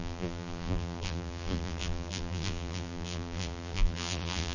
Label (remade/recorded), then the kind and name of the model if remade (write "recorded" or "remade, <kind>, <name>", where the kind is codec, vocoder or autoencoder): remade, vocoder, BigVGAN v2